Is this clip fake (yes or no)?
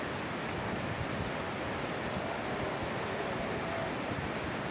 no